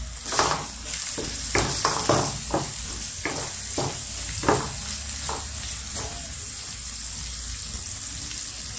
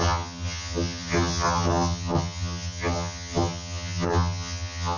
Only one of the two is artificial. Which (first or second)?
second